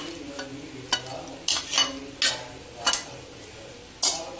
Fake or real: real